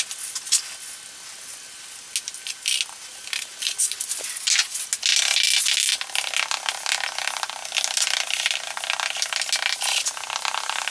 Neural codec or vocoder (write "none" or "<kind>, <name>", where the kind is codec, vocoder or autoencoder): none